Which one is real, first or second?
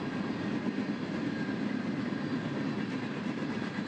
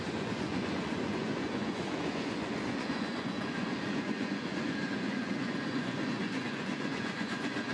first